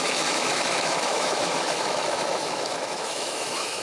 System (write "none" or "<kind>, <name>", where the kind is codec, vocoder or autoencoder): autoencoder, DAC-VAE